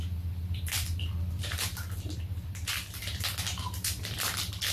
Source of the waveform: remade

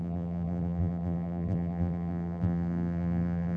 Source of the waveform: remade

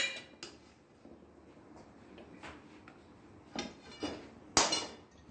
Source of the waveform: recorded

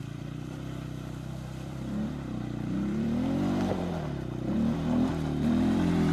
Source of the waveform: remade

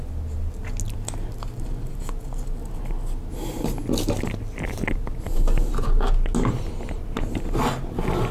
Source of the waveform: recorded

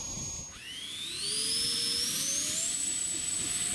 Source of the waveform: recorded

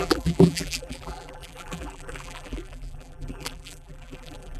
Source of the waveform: remade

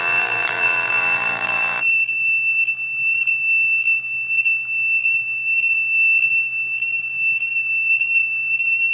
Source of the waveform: remade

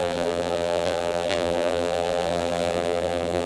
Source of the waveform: remade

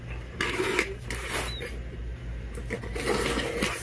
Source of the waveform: recorded